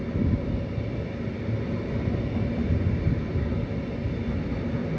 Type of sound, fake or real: real